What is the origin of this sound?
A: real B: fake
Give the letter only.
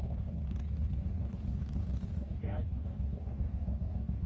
B